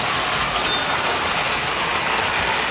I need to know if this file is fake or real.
real